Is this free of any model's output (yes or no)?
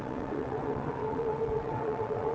no